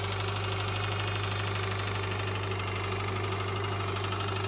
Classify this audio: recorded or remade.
recorded